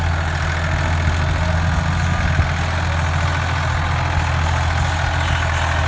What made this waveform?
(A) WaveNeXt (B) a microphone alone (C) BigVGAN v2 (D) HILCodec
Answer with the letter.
B